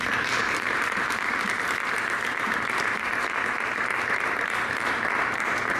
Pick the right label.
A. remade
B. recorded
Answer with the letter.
A